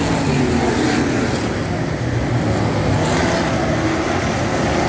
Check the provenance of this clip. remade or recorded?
recorded